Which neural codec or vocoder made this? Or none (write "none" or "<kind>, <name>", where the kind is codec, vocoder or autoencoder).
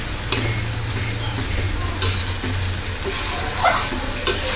none